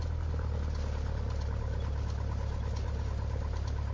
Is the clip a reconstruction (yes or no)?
no